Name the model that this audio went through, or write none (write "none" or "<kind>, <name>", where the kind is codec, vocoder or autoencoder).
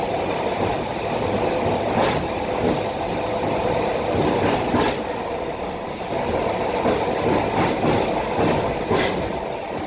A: none